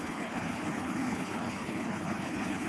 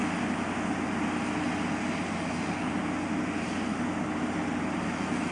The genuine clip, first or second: second